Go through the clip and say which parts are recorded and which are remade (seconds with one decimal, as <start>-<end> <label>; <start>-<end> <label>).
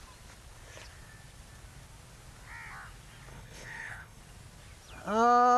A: 0.0-3.3 recorded; 3.3-4.2 remade; 4.2-5.6 recorded